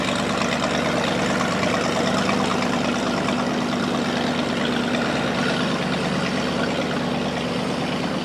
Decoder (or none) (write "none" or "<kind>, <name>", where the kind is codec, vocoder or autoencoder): none